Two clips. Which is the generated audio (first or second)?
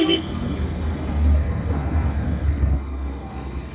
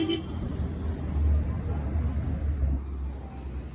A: first